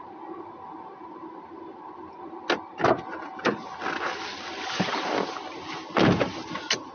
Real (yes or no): yes